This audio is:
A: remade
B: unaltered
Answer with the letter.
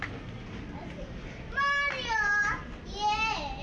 B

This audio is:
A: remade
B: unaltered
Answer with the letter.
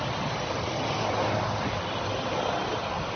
B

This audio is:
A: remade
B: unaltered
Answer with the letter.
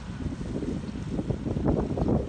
B